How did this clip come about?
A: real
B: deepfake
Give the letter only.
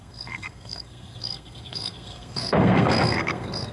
B